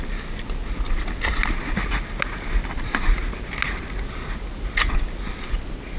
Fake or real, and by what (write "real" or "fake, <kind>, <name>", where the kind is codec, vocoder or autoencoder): real